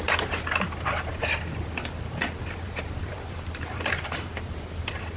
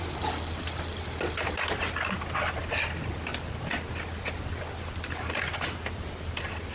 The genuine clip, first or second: second